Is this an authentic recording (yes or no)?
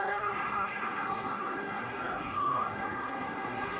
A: no